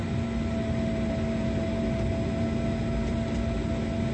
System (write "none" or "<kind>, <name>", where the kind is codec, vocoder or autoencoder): none